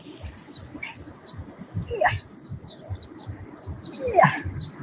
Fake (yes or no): no